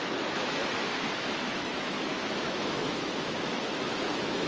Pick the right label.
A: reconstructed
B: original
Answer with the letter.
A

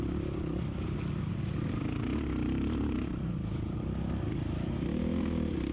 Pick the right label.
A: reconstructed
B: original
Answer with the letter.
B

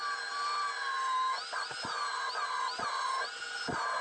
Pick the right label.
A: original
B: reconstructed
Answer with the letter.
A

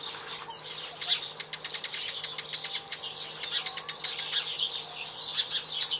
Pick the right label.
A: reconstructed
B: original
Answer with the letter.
B